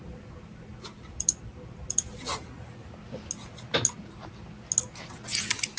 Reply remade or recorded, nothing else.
recorded